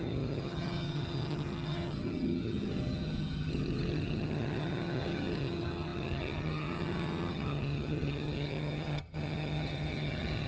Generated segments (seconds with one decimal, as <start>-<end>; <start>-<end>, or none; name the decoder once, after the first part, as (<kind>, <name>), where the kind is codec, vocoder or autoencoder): 0.0-10.5 (vocoder, HiFi-GAN)